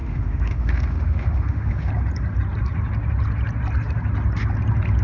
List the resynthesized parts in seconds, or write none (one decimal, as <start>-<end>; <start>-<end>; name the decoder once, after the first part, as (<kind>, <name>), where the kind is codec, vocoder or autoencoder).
0.0-1.9 (autoencoder, DAC-VAE)